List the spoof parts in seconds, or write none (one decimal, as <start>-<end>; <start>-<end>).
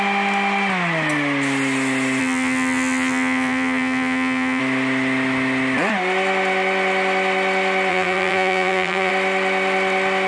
2.2-4.6; 7.9-9.1